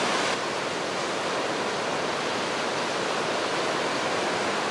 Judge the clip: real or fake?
real